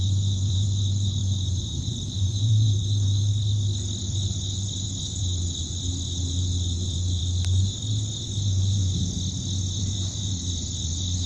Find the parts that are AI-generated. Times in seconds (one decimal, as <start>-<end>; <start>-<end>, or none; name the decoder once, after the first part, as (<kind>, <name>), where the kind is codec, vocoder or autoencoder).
0.0-3.3 (vocoder, BigVGAN v2); 4.0-7.2; 8.3-8.8; 9.8-11.3